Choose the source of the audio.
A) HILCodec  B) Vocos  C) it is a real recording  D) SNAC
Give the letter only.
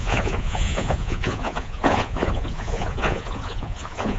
B